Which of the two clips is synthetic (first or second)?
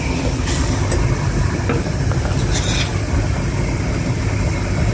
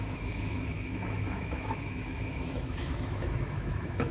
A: second